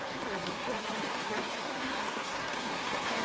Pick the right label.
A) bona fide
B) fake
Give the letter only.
B